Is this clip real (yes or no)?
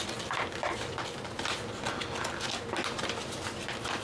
yes